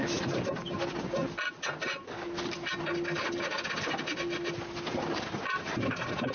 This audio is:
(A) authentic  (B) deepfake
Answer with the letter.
A